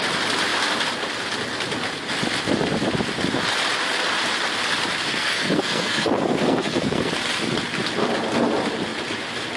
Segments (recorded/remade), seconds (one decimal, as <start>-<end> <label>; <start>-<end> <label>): 0.0-5.1 recorded; 5.1-7.1 remade; 7.1-9.6 recorded